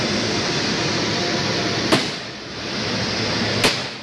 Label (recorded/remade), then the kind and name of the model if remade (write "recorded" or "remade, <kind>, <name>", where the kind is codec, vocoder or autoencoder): recorded